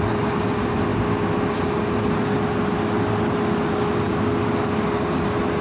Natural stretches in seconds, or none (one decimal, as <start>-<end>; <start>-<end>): 0.0-5.6